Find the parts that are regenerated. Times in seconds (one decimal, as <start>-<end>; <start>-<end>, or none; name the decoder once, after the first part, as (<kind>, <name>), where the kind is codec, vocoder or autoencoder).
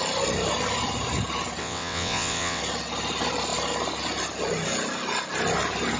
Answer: 1.6-2.6 (vocoder, WaveNeXt)